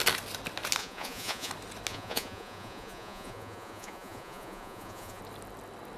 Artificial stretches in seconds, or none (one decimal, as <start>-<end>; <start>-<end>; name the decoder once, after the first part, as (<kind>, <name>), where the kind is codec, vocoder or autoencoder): 0.8-1.5 (vocoder, Vocos); 1.9-5.2